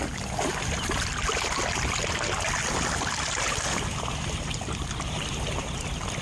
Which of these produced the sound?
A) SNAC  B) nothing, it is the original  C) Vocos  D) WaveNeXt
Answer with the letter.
B